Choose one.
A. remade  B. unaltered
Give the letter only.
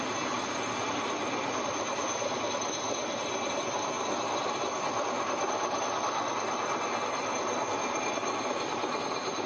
B